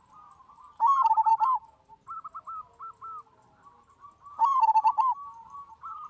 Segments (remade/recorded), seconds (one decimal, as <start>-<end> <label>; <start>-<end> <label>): 0.0-1.3 recorded; 1.3-1.8 remade; 1.8-6.1 recorded